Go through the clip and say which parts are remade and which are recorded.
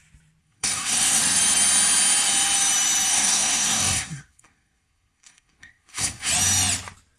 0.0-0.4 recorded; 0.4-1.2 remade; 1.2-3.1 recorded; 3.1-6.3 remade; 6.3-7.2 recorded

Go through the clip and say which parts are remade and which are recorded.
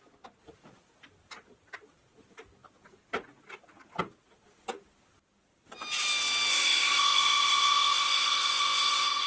0.0-6.5 recorded; 6.5-9.3 remade